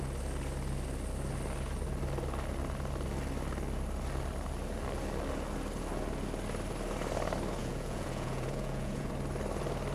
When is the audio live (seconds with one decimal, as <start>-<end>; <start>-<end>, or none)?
0.0-7.6; 9.1-9.9